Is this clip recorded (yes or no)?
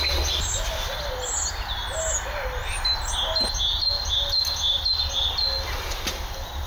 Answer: yes